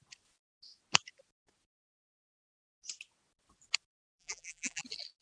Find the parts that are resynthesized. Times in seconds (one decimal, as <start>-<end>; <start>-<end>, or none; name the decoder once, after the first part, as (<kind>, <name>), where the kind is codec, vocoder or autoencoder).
3.9-4.8 (vocoder, BigVGAN v2)